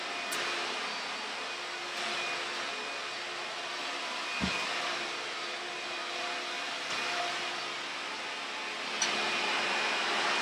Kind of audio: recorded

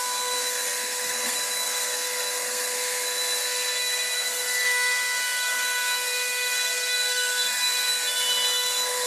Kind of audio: remade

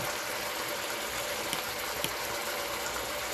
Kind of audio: recorded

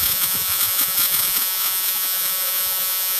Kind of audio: remade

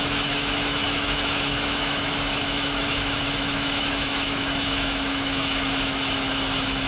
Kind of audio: remade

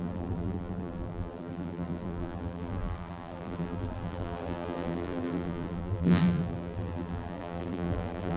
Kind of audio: remade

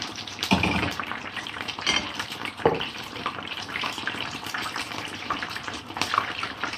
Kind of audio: remade